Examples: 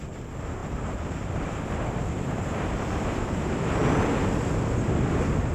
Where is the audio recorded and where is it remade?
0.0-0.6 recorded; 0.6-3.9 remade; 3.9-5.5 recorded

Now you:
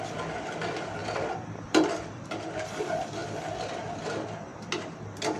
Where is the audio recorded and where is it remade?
0.0-1.0 recorded; 1.0-2.8 remade; 2.8-5.4 recorded

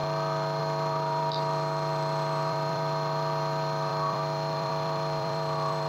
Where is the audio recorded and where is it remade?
0.0-0.6 recorded; 0.6-5.9 remade

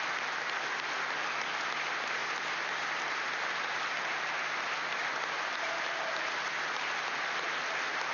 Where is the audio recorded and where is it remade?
0.0-8.1 recorded

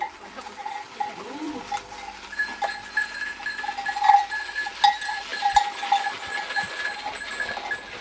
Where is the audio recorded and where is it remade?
0.0-0.6 recorded; 0.6-1.5 remade; 1.5-5.3 recorded; 5.3-7.0 remade; 7.0-8.0 recorded

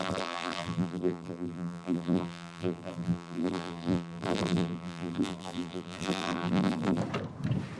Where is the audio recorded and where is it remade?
0.0-7.0 remade; 7.0-7.8 recorded